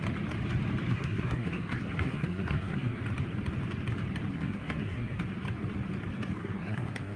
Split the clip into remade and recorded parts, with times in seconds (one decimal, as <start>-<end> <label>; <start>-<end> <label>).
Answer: 0.0-0.9 recorded; 0.9-3.0 remade; 3.0-4.3 recorded; 4.3-5.2 remade; 5.2-6.4 recorded; 6.4-7.2 remade